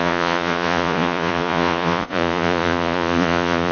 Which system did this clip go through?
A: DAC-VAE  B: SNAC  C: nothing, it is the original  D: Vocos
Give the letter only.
D